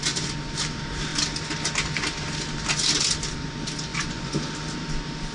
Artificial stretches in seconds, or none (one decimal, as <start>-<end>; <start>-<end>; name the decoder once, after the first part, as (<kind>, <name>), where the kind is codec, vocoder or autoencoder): 3.9-4.5 (vocoder, Vocos)